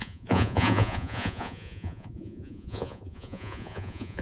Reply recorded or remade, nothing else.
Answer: remade